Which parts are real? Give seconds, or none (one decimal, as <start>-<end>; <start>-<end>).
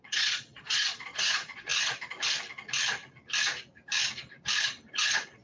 1.7-4.9